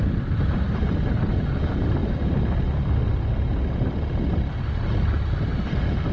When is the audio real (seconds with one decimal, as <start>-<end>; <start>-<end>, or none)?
0.0-6.1